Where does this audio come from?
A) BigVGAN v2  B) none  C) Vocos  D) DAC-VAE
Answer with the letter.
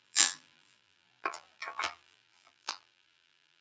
A